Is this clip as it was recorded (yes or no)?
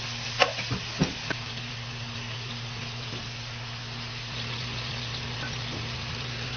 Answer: yes